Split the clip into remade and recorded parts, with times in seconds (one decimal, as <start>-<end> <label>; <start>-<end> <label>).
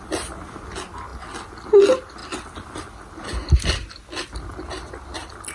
0.0-5.5 recorded